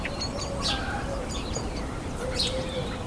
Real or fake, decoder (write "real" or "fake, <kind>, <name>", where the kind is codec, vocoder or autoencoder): fake, vocoder, BigVGAN v2